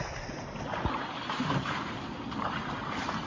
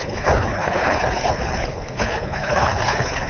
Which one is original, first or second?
first